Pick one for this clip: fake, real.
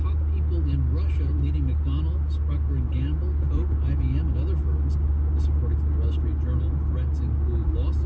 real